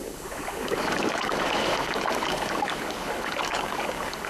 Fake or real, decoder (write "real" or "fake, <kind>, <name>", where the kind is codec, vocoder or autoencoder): fake, codec, DAC